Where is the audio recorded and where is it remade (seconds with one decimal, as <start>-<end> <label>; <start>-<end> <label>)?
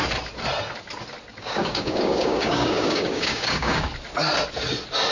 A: 0.0-1.3 recorded; 1.3-3.9 remade; 3.9-5.1 recorded